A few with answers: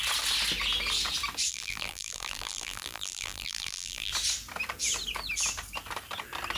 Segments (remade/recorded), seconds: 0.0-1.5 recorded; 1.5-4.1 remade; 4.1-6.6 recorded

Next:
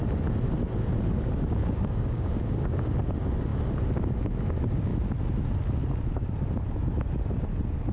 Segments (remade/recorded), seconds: 0.0-1.6 recorded; 1.6-3.1 remade; 3.1-7.9 recorded

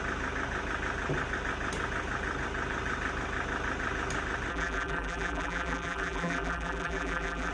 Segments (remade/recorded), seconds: 0.0-4.5 recorded; 4.5-7.5 remade